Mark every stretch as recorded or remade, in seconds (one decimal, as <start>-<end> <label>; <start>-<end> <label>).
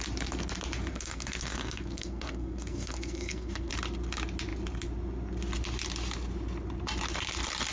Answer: 0.0-0.9 recorded; 0.9-3.7 remade; 3.7-7.7 recorded